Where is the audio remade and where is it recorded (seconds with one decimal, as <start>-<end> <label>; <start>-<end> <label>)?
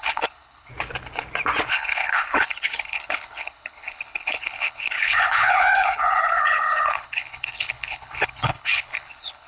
0.0-0.7 remade; 0.7-1.7 recorded; 1.7-9.5 remade